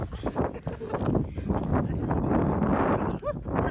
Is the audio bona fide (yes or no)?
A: yes